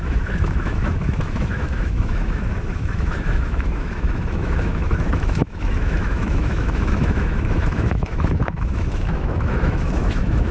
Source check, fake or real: fake